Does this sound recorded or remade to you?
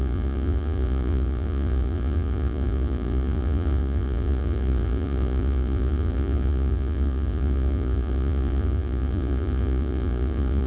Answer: remade